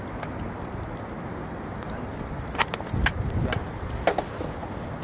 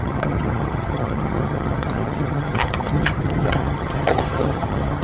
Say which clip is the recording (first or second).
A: first